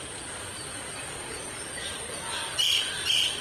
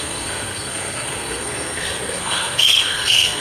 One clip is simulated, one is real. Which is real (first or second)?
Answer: first